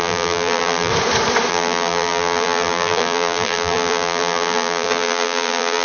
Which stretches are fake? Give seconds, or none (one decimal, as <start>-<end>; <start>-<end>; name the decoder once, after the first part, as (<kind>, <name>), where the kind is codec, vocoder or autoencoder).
0.0-0.9 (vocoder, BigVGAN v2); 1.5-5.8